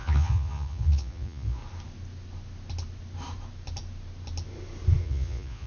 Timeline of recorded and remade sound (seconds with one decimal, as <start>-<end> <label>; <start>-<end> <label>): 0.0-1.6 remade; 1.6-5.0 recorded; 5.0-5.7 remade